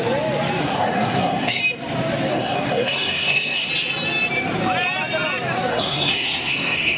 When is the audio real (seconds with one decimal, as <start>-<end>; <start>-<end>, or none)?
0.0-0.6; 1.6-2.3; 3.7-5.7